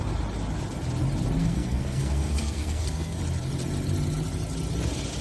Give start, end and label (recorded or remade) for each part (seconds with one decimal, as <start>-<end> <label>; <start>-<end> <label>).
0.0-1.4 recorded; 1.4-3.2 remade; 3.2-5.2 recorded